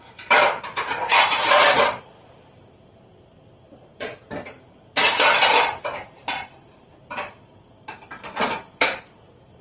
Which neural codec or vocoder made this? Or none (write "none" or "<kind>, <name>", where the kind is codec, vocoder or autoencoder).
vocoder, BigVGAN v2